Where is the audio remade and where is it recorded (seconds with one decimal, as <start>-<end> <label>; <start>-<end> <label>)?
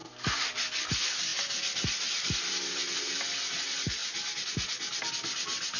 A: 0.0-5.8 recorded